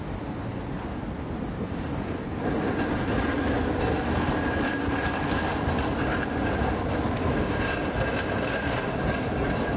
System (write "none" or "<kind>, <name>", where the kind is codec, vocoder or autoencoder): none